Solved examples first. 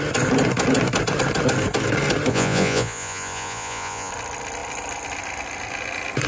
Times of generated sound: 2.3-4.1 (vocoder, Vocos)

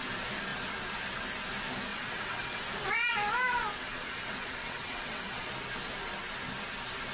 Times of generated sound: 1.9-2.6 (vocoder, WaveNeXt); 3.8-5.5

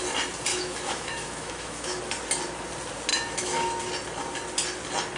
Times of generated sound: 0.5-2.0 (autoencoder, DAC-VAE); 3.1-3.8

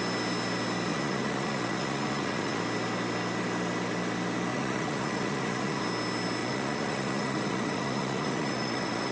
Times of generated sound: 0.9-2.6 (vocoder, Vocos); 4.5-5.8; 6.4-9.1

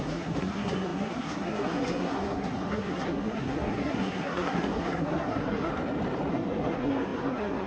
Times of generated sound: 0.0-5.7 (codec, SNAC); 6.3-7.7

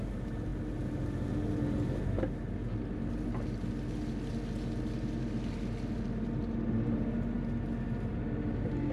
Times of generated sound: none